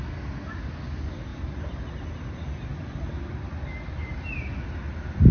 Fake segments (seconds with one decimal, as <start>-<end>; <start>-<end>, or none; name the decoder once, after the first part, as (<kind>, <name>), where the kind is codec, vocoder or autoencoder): 1.3-1.8 (vocoder, BigVGAN v2)